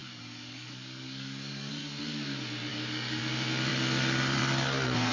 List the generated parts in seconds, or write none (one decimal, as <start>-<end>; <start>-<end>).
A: 0.0-1.7; 2.7-3.2